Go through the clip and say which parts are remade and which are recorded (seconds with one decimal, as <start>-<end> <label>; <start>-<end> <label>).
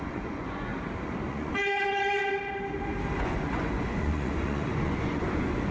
0.0-0.7 remade; 0.7-1.3 recorded; 1.3-2.2 remade; 2.2-3.2 recorded; 3.2-5.7 remade